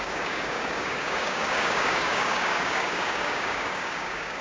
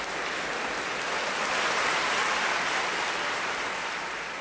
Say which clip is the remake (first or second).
first